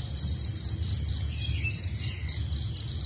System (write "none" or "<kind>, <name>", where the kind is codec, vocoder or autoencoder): none